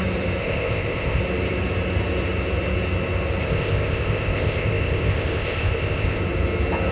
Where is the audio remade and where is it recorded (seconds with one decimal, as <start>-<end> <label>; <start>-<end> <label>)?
0.0-0.4 recorded; 0.4-1.2 remade; 1.2-3.4 recorded; 3.4-6.2 remade; 6.2-6.9 recorded